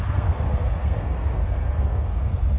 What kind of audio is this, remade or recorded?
remade